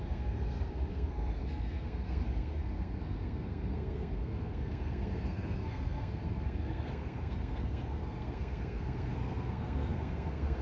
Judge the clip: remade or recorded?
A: remade